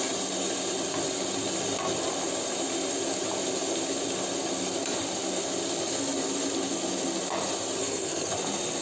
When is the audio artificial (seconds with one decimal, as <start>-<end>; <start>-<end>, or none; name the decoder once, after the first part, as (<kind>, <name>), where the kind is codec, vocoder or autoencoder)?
7.8-8.3 (codec, SNAC)